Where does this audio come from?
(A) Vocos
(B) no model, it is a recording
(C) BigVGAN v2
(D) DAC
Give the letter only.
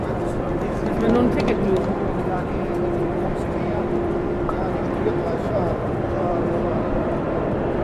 C